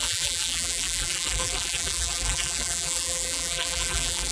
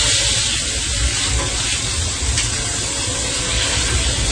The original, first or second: second